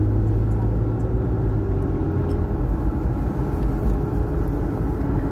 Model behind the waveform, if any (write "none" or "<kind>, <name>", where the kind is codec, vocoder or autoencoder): none